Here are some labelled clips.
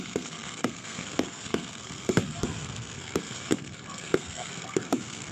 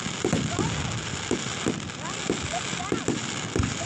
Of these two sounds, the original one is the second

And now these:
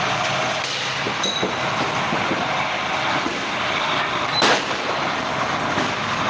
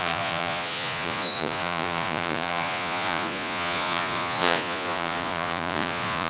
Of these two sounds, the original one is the first